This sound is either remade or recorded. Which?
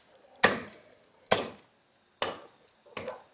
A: recorded